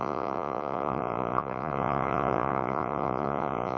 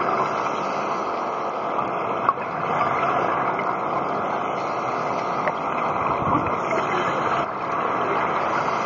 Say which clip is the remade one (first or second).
first